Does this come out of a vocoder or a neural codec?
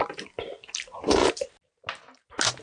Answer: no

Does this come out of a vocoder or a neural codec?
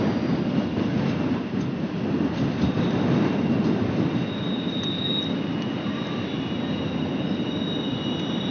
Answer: no